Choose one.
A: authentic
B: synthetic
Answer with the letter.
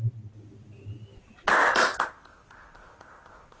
A